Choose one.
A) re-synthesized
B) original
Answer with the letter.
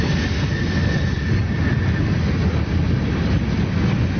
B